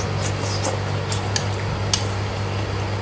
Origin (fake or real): real